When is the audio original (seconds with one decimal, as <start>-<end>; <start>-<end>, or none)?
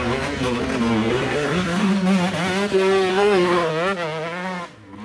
0.0-1.1; 1.9-3.1; 3.7-5.0